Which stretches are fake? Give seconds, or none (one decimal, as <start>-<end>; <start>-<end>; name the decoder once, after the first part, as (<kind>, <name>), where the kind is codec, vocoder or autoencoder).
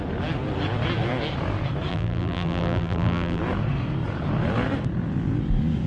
1.9-3.4 (vocoder, BigVGAN v2)